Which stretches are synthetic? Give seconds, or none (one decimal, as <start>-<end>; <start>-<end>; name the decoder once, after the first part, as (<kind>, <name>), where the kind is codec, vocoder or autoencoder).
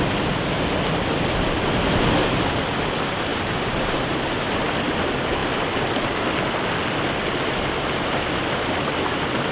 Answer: 3.3-4.2 (vocoder, BigVGAN v2)